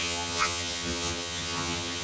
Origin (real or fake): fake